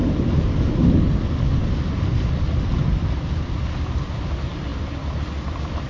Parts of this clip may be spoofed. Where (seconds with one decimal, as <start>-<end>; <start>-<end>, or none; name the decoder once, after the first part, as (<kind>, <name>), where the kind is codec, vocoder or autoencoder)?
none